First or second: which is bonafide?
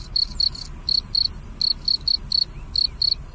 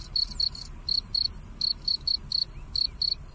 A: first